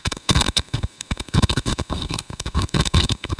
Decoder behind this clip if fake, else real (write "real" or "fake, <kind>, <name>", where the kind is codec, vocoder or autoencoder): fake, codec, SNAC